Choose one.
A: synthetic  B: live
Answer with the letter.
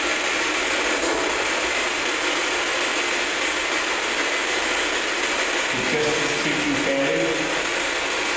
B